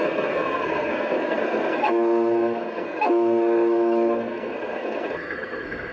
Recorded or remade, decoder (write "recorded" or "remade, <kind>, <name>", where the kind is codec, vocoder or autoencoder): remade, codec, SNAC